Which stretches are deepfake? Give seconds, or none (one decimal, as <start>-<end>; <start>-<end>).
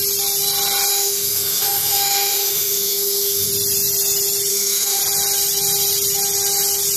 0.9-3.5; 4.5-5.0